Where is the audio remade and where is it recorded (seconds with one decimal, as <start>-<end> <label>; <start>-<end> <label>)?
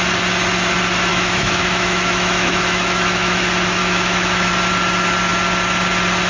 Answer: 0.0-1.1 recorded; 1.1-3.4 remade; 3.4-3.8 recorded; 3.8-4.5 remade; 4.5-6.3 recorded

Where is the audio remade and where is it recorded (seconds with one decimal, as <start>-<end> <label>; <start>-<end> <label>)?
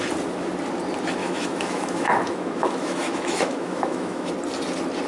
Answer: 0.0-1.2 recorded; 1.2-4.3 remade; 4.3-5.1 recorded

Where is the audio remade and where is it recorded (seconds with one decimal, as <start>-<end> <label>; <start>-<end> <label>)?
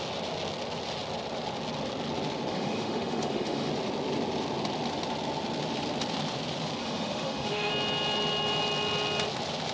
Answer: 0.0-2.5 recorded; 2.5-3.7 remade; 3.7-6.8 recorded; 6.8-7.7 remade; 7.7-9.7 recorded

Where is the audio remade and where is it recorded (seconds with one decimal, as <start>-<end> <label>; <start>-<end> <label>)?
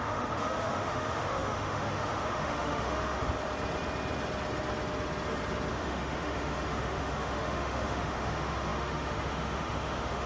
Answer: 0.0-3.2 remade; 3.2-5.7 recorded; 5.7-10.3 remade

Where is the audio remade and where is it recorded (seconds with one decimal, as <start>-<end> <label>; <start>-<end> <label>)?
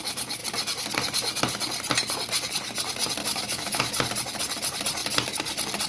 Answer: 0.0-3.2 recorded; 3.2-3.9 remade; 3.9-5.9 recorded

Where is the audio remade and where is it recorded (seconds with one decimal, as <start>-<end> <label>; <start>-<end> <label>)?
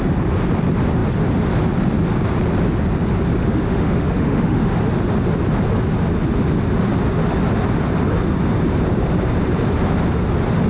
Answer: 0.0-3.4 recorded; 3.4-4.8 remade; 4.8-10.7 recorded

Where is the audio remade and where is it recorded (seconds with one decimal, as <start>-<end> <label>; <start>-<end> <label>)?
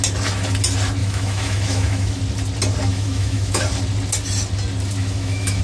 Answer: 0.0-1.0 recorded; 1.0-2.2 remade; 2.2-2.9 recorded; 2.9-3.6 remade; 3.6-5.0 recorded; 5.0-5.6 remade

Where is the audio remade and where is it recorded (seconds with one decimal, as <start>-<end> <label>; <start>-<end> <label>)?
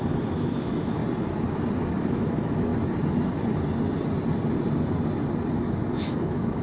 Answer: 0.0-1.0 remade; 1.0-2.1 recorded; 2.1-2.7 remade; 2.7-5.5 recorded; 5.5-6.6 remade